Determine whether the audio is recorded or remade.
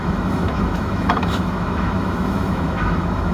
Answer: remade